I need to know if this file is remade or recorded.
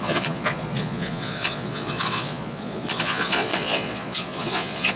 remade